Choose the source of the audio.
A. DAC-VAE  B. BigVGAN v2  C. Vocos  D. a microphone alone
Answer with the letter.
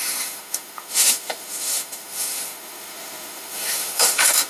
A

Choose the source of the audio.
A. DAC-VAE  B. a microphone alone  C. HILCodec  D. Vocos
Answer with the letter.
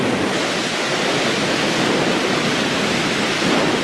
B